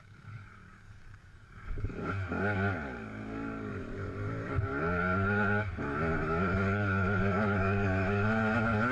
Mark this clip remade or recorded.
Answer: remade